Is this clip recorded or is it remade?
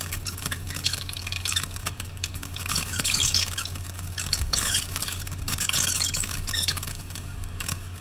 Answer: remade